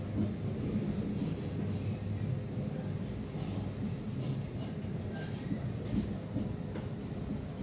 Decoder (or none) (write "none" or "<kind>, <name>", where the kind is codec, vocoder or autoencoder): none